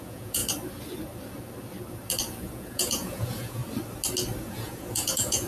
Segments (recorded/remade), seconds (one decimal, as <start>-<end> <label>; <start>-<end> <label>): 0.0-0.4 remade; 0.4-2.4 recorded; 2.4-3.6 remade; 3.6-4.4 recorded; 4.4-5.5 remade

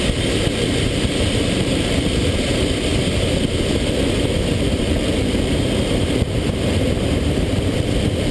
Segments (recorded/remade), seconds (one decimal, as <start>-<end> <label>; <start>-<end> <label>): 0.0-8.3 remade

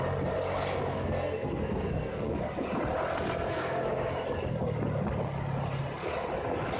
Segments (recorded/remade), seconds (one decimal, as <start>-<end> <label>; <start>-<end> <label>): 0.0-0.9 recorded; 0.9-2.4 remade; 2.4-3.5 recorded; 3.5-4.1 remade; 4.1-6.8 recorded

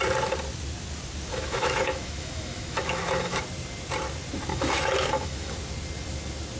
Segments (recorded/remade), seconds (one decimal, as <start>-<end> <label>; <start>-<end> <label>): 0.0-1.3 recorded; 1.3-3.4 remade; 3.4-4.5 recorded; 4.5-5.5 remade; 5.5-6.6 recorded